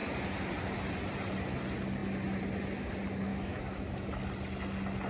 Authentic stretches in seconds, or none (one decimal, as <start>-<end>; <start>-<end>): 0.0-3.3; 4.0-5.1